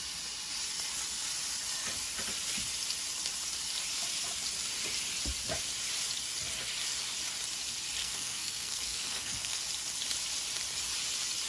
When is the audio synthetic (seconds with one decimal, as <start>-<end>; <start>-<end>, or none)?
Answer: 8.0-9.6